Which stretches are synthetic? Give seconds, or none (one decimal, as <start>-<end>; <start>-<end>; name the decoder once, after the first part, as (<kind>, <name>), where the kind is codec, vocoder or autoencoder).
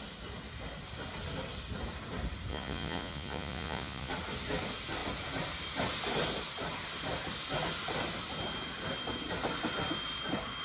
2.5-4.1 (vocoder, Vocos)